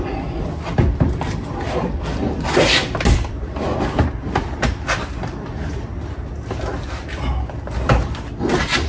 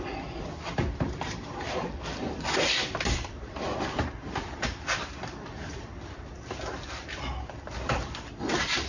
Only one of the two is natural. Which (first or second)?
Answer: first